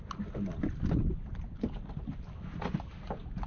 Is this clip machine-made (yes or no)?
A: no